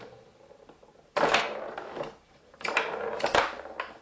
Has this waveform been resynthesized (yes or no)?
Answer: no